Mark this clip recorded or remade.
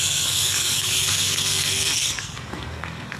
remade